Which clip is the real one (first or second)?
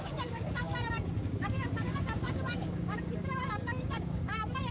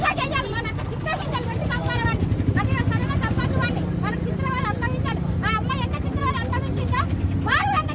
second